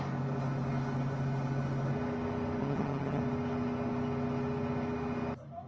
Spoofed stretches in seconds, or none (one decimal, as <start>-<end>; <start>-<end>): 2.6-3.2